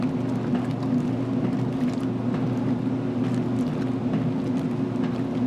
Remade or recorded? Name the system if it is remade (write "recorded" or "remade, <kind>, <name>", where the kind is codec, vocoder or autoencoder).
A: recorded